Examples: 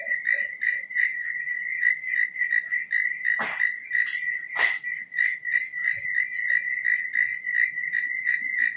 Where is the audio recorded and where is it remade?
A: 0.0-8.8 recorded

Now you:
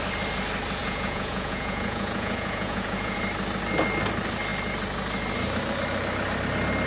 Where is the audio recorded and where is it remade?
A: 0.0-0.8 recorded; 0.8-3.2 remade; 3.2-6.9 recorded

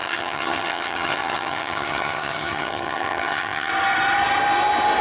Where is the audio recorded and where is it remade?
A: 0.0-3.7 remade; 3.7-5.0 recorded

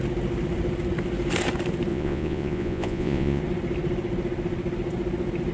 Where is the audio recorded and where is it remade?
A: 0.0-1.9 recorded; 1.9-3.4 remade; 3.4-5.5 recorded

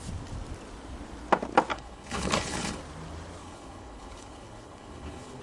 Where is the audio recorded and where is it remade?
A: 0.0-1.7 recorded; 1.7-2.8 remade; 2.8-3.4 recorded; 3.4-5.4 remade